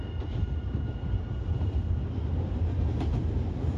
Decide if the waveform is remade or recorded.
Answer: recorded